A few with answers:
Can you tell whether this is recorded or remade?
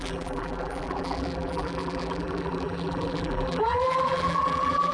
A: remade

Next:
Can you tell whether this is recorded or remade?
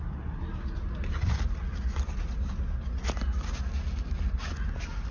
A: recorded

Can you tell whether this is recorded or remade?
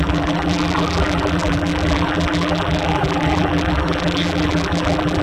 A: remade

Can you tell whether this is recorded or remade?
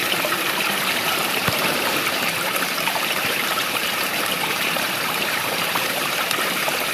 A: remade